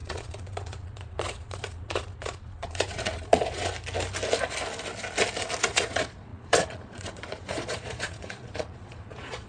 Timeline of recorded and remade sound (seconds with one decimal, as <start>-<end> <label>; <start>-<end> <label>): 0.0-3.7 remade; 3.7-5.6 recorded; 5.6-9.5 remade